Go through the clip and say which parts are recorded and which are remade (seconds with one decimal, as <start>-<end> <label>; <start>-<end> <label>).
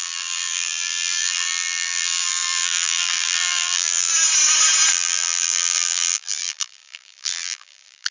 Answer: 0.0-4.1 remade; 4.1-4.9 recorded; 4.9-8.1 remade